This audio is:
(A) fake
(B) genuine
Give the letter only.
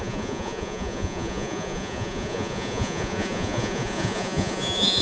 A